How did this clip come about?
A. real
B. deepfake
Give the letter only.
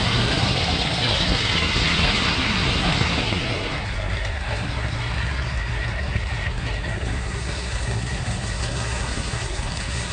B